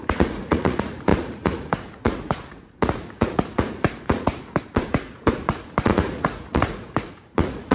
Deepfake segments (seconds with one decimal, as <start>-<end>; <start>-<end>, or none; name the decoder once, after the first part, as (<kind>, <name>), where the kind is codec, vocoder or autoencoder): 0.0-7.7 (vocoder, Vocos)